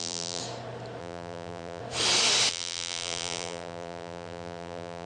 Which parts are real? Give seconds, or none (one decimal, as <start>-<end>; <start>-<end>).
0.4-1.0; 1.8-2.5